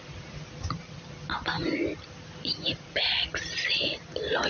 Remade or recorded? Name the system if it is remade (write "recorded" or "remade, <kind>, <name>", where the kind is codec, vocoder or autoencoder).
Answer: recorded